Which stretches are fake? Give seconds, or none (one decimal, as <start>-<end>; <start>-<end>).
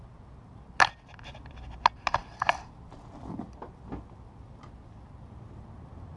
none